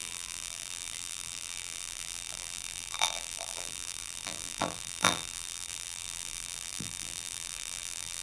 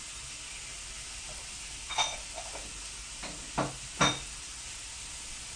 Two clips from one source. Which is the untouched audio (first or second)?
second